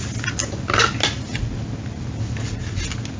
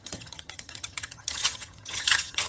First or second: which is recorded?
first